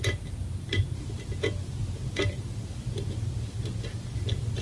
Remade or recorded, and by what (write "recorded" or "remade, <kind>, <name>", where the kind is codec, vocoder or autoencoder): recorded